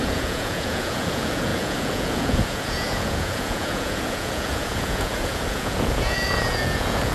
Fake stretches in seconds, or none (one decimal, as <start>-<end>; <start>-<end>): 0.0-7.1